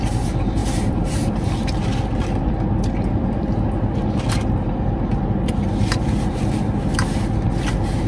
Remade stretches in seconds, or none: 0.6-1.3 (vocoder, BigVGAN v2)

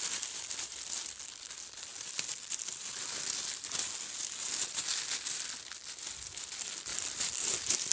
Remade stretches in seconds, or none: 6.9-7.9 (vocoder, BigVGAN v2)